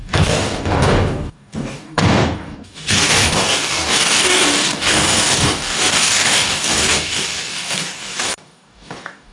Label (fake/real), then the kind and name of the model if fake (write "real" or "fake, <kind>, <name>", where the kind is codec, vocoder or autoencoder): fake, codec, DAC